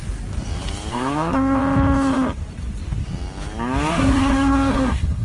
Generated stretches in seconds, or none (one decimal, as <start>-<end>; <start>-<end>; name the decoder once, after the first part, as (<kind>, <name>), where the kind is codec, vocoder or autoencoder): 0.9-1.6 (codec, SNAC); 3.9-5.2